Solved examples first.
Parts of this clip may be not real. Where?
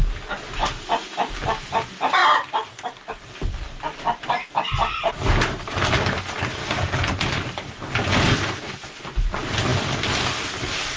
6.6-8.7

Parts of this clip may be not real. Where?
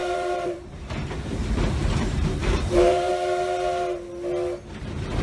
0.0-0.7; 1.4-3.1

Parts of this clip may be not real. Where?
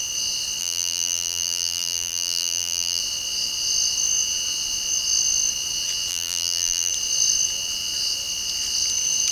0.6-3.0; 6.1-6.9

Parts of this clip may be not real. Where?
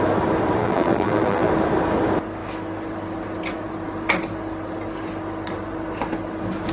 0.6-1.5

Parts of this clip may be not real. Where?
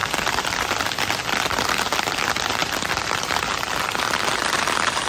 2.0-5.1